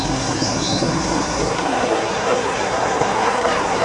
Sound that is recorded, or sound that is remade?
remade